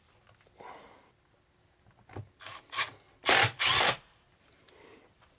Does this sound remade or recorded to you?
recorded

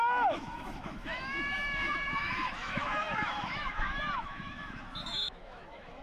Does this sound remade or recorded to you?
remade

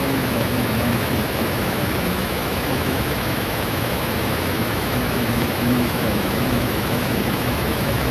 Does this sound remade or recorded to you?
remade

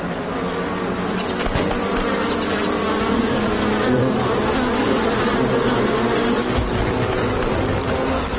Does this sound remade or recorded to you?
recorded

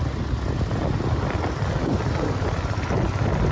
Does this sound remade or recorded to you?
recorded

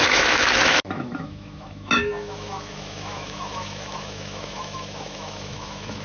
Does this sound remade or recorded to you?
remade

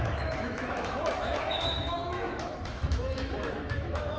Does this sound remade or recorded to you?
remade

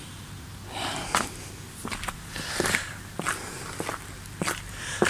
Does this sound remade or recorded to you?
recorded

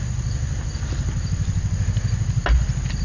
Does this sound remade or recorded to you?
recorded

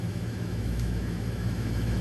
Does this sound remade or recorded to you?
remade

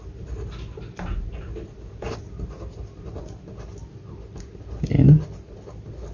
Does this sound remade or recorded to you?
recorded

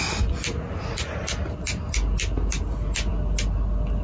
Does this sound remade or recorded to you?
recorded